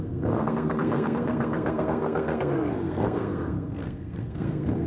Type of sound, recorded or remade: remade